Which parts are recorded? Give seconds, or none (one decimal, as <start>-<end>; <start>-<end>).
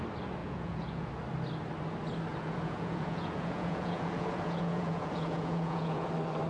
0.0-0.4; 1.1-2.3; 6.1-6.5